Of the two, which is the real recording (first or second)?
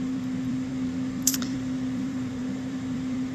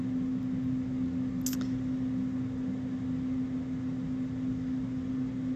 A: second